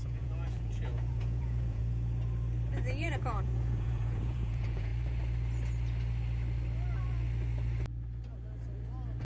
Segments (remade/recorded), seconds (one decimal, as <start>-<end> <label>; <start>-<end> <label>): 0.0-1.8 remade; 1.8-2.7 recorded; 2.7-4.9 remade; 4.9-9.2 recorded